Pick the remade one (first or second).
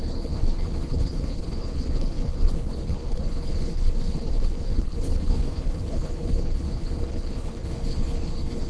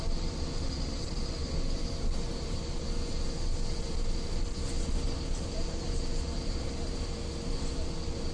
first